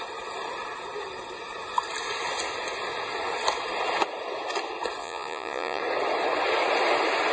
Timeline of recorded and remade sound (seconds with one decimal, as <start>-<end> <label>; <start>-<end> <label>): 0.0-5.0 recorded; 5.0-5.8 remade; 5.8-7.3 recorded